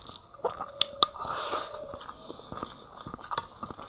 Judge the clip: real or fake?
real